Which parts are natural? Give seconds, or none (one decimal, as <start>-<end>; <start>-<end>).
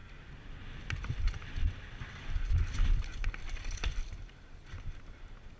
0.0-5.6